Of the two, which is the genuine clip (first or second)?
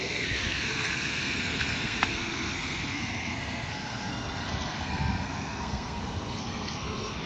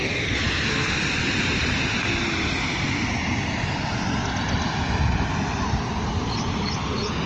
second